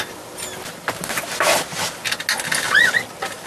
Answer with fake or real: real